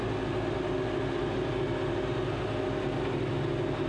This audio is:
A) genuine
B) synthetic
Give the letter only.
A